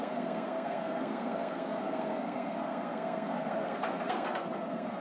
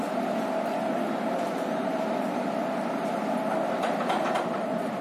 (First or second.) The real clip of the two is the second